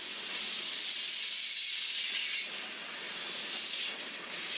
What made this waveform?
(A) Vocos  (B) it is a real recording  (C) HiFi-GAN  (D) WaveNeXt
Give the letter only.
B